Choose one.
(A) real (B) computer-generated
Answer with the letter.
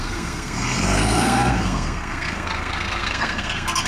B